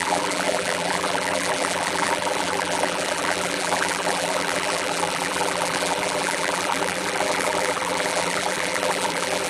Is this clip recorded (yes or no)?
no